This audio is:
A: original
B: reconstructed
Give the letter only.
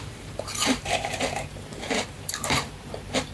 B